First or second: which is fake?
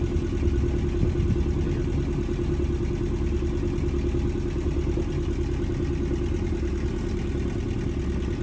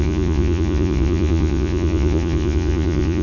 second